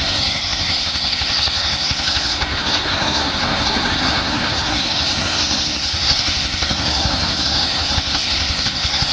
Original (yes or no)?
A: no